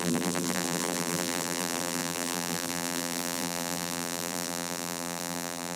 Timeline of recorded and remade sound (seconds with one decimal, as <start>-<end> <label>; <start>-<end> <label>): 0.0-5.8 remade